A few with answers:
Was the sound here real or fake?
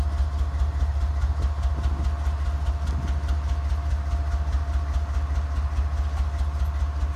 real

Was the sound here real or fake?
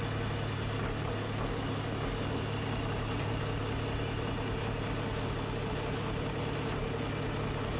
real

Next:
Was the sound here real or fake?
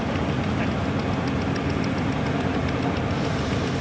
real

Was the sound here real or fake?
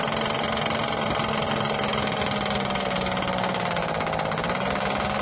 real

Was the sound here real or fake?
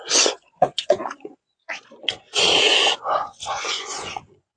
fake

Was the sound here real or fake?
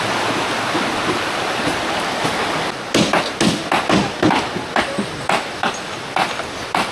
real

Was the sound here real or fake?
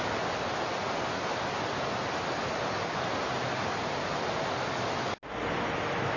real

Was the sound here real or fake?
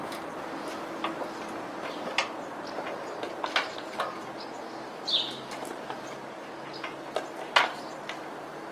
real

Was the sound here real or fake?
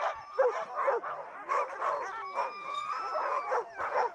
real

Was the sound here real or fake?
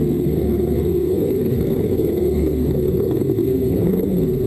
fake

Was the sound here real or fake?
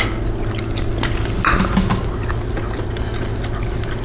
real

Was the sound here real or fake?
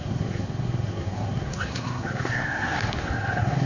fake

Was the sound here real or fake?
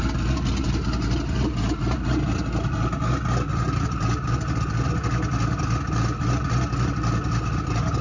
real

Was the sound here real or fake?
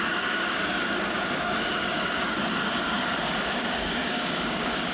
fake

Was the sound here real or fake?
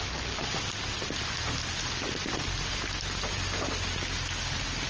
real